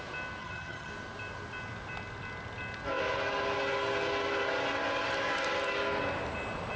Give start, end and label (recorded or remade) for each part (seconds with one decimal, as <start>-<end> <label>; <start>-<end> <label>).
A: 0.0-0.4 recorded; 0.4-0.9 remade; 0.9-6.8 recorded